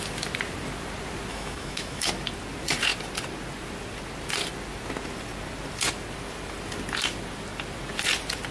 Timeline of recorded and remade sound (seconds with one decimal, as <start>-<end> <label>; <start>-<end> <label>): 0.0-1.3 recorded; 1.3-2.1 remade; 2.1-8.5 recorded

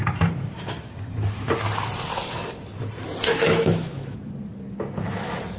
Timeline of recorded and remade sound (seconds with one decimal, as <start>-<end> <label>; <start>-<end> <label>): 0.0-3.3 recorded; 3.3-4.3 remade; 4.3-5.6 recorded